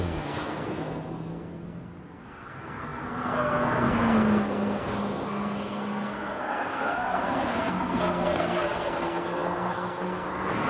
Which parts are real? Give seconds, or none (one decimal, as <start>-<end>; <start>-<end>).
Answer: none